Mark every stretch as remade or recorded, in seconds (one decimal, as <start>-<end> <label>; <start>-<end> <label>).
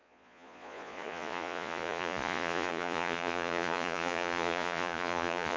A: 0.0-5.6 remade